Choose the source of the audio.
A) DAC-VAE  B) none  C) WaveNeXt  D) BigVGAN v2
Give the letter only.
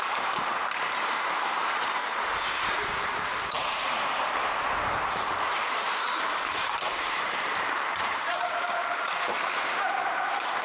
D